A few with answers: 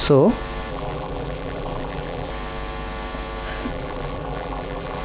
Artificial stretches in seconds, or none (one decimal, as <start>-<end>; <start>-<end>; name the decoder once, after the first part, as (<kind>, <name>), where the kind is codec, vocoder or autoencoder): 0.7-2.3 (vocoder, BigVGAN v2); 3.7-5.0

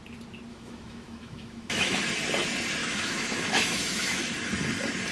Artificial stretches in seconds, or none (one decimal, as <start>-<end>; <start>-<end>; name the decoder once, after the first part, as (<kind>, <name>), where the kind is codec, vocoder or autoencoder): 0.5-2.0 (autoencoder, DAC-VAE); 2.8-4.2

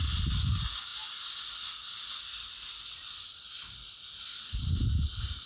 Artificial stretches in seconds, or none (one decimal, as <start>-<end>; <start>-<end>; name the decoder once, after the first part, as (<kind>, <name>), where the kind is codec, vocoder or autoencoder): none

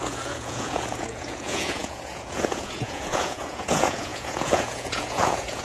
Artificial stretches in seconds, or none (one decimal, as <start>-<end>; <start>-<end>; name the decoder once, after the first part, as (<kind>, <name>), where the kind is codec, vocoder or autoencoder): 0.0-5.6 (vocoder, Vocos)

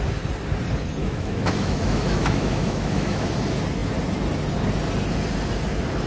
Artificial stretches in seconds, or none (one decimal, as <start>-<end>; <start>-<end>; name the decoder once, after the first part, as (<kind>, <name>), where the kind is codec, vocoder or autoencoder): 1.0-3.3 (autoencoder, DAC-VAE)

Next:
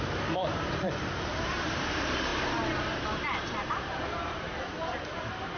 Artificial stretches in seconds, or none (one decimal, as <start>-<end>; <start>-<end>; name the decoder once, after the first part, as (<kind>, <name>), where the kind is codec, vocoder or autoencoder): 0.0-4.5 (vocoder, BigVGAN v2); 5.1-5.6